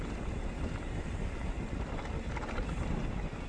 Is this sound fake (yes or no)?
no